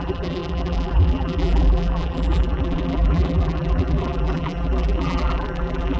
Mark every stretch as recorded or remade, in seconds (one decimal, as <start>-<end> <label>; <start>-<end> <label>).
0.0-6.0 remade